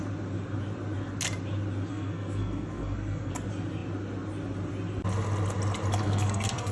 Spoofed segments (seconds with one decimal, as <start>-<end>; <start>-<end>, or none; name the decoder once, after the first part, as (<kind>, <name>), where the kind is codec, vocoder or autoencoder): 1.9-3.3 (codec, SNAC); 6.0-6.7